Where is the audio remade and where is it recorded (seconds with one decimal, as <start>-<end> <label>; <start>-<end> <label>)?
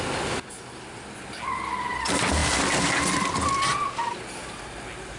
0.0-5.2 recorded